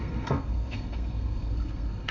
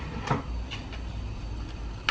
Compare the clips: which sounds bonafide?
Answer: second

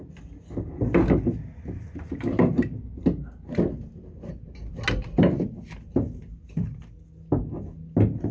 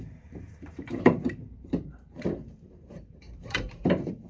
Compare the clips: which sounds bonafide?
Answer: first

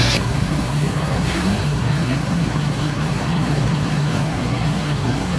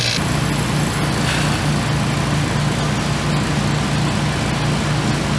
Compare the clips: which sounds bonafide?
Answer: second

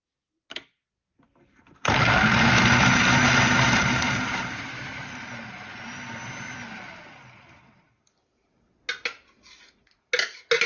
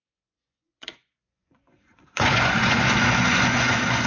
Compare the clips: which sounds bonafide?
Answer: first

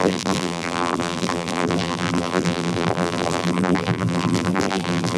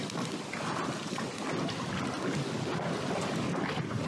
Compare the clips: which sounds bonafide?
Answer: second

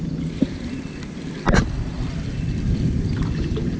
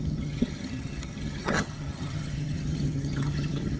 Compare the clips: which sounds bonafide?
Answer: first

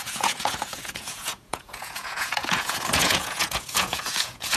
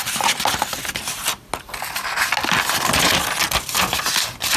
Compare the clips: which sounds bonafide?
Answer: second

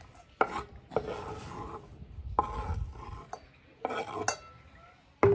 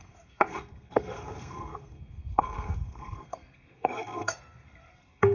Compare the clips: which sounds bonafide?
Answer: first